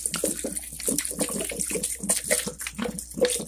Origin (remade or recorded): recorded